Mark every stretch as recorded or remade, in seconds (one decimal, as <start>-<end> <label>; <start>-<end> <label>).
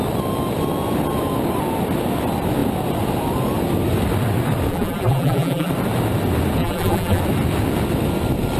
0.0-4.7 recorded; 4.7-5.7 remade; 5.7-6.6 recorded; 6.6-7.2 remade; 7.2-8.6 recorded